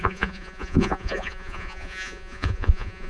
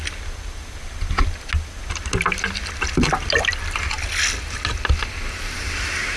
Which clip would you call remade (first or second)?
first